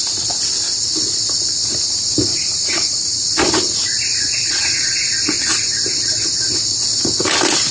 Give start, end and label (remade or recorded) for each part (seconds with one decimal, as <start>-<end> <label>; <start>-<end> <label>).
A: 0.0-2.3 recorded; 2.3-2.9 remade; 2.9-4.1 recorded; 4.1-5.1 remade; 5.1-7.7 recorded

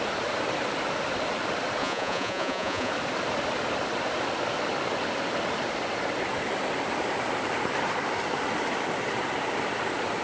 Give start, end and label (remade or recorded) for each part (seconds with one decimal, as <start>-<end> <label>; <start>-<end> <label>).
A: 0.0-1.8 recorded; 1.8-2.9 remade; 2.9-10.2 recorded

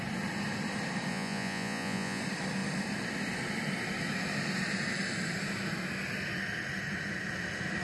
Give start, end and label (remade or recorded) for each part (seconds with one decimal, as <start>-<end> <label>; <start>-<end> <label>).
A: 0.0-1.1 recorded; 1.1-2.2 remade; 2.2-7.8 recorded

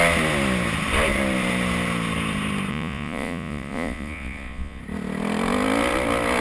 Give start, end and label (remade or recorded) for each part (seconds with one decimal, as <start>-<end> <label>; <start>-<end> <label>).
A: 0.0-2.7 recorded; 2.7-4.8 remade; 4.8-6.4 recorded

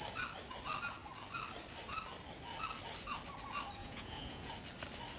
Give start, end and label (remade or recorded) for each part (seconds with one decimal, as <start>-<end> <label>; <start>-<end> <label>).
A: 0.0-3.8 recorded; 3.8-4.5 remade; 4.5-5.2 recorded

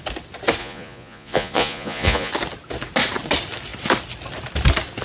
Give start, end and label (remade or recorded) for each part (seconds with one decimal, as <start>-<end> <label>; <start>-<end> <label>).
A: 0.0-0.6 recorded; 0.6-2.3 remade; 2.3-5.0 recorded

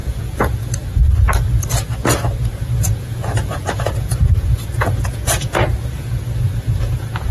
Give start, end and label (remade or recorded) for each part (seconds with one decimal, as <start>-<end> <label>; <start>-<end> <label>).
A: 0.0-0.7 remade; 0.7-2.5 recorded; 2.5-7.3 remade